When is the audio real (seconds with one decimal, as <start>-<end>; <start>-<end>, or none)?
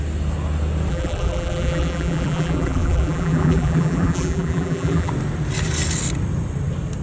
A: 0.0-0.9; 5.1-7.0